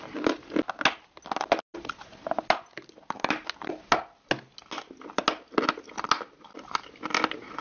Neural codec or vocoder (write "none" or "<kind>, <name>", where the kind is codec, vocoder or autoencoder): none